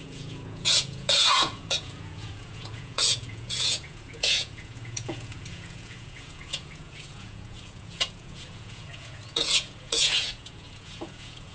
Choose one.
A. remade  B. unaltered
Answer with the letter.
A